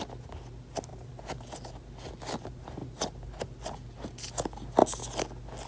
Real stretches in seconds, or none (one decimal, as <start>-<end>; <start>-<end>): 0.0-5.7